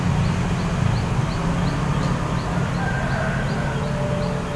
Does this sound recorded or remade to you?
recorded